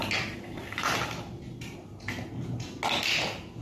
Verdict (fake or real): real